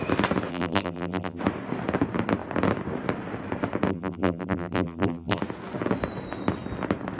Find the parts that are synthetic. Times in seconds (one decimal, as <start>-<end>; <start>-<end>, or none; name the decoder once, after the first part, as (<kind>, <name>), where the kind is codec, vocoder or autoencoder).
0.5-1.4 (vocoder, BigVGAN v2); 3.9-5.4